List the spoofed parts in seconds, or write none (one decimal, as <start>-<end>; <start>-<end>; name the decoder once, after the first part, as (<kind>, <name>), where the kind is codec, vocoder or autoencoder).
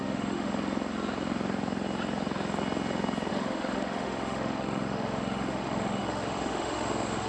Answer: 0.0-0.5 (autoencoder, DAC-VAE); 3.3-7.3